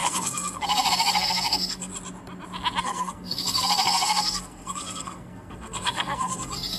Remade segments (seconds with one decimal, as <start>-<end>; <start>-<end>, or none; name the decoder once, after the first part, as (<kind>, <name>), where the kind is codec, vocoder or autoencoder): 0.0-1.9 (codec, SNAC); 2.8-6.8